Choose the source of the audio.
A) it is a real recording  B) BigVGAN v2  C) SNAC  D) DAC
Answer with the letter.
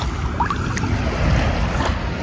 A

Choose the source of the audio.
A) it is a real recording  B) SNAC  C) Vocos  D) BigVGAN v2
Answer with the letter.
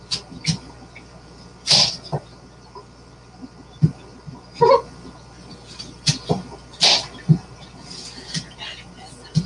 A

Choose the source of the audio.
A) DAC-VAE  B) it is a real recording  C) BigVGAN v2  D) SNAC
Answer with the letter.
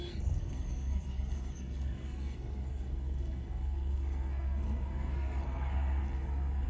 D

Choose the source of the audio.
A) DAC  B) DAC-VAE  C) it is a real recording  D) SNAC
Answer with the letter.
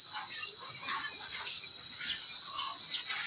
C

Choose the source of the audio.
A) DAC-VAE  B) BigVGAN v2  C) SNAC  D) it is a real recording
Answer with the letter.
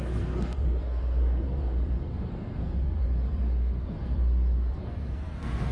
C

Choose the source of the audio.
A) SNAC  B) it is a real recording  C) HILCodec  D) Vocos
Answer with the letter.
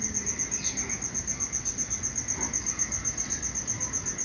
B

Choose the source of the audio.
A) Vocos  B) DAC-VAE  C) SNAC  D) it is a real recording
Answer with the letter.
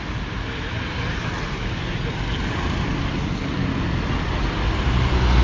D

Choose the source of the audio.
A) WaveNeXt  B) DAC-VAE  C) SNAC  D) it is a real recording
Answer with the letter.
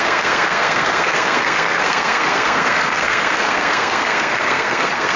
C